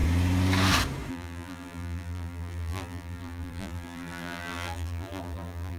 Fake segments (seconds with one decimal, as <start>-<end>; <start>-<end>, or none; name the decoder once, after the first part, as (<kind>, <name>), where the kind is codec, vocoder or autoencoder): 1.1-5.8 (vocoder, BigVGAN v2)